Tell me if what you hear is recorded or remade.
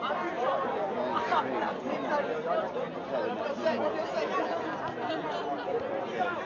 recorded